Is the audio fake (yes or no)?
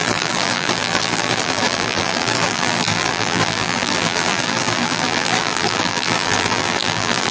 yes